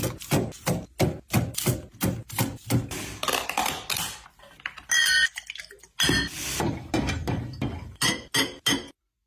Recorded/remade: recorded